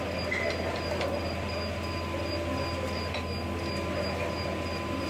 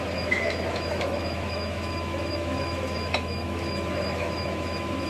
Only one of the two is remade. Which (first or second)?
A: second